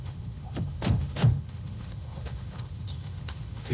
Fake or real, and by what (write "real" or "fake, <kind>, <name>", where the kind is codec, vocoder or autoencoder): fake, autoencoder, DAC-VAE